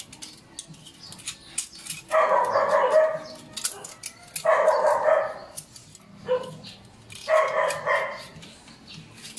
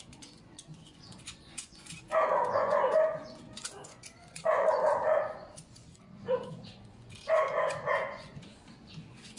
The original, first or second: first